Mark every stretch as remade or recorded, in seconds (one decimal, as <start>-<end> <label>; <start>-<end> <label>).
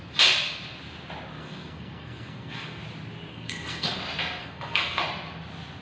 0.0-1.4 recorded; 1.4-2.8 remade; 2.8-3.3 recorded; 3.3-4.0 remade; 4.0-4.4 recorded; 4.4-5.0 remade; 5.0-5.8 recorded